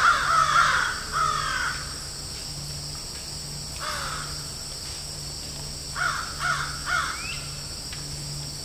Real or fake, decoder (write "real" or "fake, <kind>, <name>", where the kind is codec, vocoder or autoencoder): real